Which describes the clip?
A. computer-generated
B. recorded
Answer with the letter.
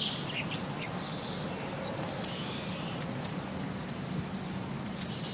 B